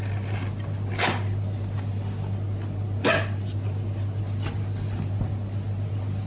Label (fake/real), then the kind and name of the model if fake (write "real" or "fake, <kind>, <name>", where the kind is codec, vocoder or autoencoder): real